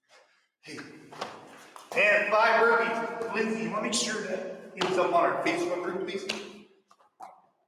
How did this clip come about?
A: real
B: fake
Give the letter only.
A